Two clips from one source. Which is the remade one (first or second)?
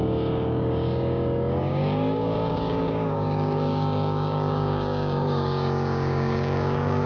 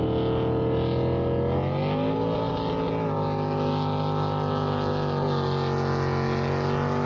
first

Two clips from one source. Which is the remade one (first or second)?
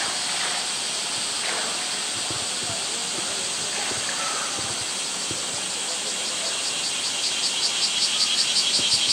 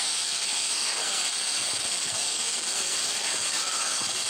second